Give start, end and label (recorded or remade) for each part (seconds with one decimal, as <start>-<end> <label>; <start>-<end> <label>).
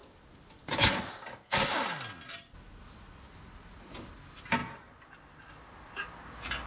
0.0-6.7 recorded